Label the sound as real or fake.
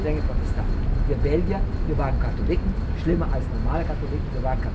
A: real